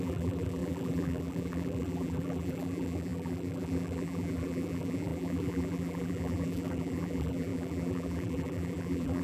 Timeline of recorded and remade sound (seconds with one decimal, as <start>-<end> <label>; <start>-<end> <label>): 0.0-9.2 remade